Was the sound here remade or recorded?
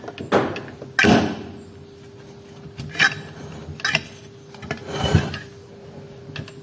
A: recorded